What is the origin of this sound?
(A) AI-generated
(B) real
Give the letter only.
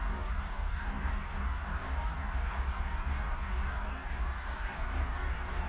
A